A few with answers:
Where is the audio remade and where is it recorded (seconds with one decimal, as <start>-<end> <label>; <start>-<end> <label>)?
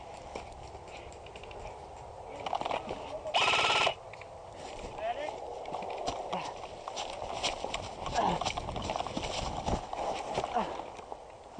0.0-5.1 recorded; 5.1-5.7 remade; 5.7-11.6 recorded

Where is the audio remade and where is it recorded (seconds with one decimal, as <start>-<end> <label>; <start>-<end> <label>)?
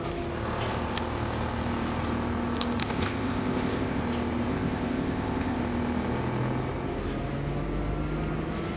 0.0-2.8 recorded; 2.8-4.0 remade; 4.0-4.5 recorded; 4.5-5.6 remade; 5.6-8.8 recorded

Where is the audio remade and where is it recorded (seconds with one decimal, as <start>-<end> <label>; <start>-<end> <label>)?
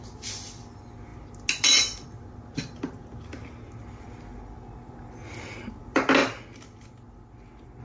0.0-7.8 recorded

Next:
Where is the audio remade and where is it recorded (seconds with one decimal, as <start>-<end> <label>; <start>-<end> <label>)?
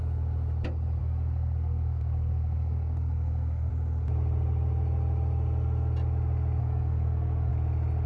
0.0-1.0 recorded; 1.0-3.7 remade; 3.7-6.6 recorded; 6.6-7.5 remade; 7.5-8.1 recorded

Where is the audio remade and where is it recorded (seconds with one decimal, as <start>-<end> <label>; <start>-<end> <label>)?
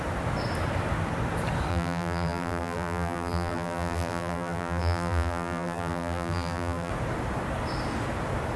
0.0-1.7 recorded; 1.7-6.9 remade; 6.9-8.6 recorded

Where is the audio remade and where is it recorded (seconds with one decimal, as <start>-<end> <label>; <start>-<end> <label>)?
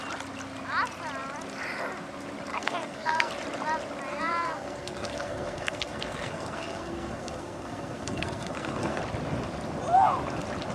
0.0-2.5 recorded; 2.5-3.3 remade; 3.3-4.1 recorded; 4.1-9.0 remade; 9.0-10.7 recorded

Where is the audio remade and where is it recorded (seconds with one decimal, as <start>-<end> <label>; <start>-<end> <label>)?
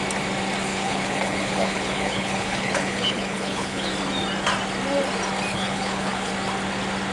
0.0-0.7 recorded; 0.7-3.9 remade; 3.9-5.5 recorded; 5.5-6.3 remade; 6.3-7.1 recorded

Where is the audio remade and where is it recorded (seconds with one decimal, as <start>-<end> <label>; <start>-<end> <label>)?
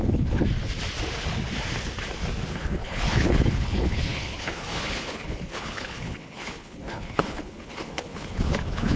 0.0-0.4 remade; 0.4-2.5 recorded; 2.5-9.0 remade